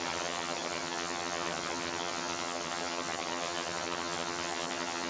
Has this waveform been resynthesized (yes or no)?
yes